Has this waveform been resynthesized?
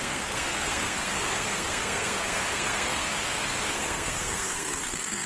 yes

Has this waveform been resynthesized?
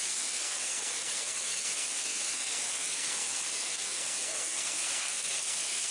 yes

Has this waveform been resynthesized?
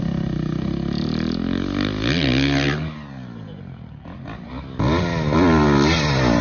no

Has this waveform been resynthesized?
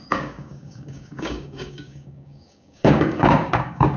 yes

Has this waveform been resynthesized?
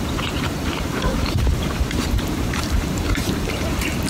yes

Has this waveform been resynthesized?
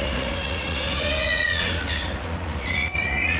yes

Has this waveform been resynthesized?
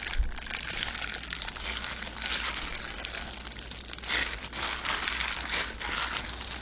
no